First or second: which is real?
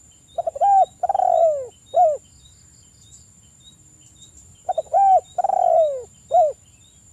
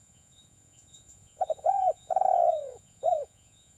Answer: first